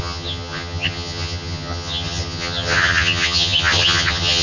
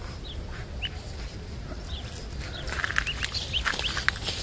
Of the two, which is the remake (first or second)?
first